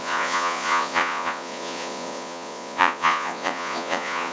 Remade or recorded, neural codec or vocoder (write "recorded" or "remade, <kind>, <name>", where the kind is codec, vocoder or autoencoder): remade, vocoder, Vocos